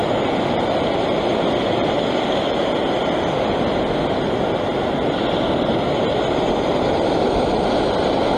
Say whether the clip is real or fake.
real